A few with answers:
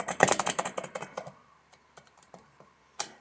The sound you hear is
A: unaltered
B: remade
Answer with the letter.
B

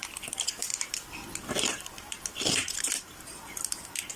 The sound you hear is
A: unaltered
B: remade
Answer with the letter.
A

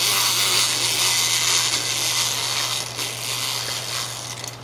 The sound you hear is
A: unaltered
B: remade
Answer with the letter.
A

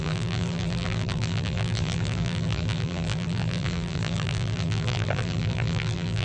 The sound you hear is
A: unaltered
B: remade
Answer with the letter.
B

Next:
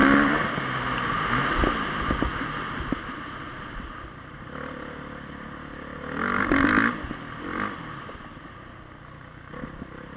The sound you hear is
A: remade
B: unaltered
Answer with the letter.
B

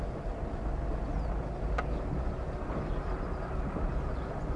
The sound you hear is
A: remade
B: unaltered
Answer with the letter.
B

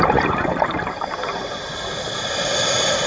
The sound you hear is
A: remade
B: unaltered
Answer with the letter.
A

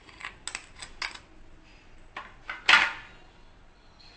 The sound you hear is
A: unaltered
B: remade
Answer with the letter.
A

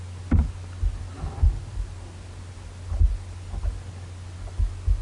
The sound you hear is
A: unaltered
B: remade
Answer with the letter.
A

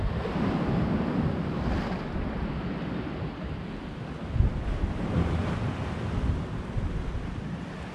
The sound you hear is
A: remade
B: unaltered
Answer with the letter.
B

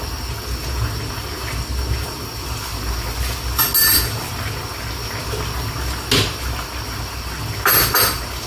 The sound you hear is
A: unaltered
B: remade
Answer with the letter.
A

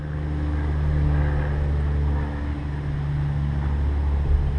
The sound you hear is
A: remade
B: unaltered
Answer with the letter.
B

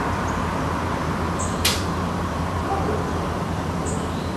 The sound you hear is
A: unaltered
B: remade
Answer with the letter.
B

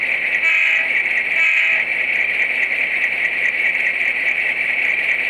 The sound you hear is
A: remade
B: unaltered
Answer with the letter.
B